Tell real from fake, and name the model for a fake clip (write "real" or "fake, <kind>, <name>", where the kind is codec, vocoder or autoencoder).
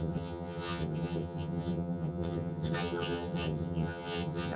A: fake, vocoder, HiFi-GAN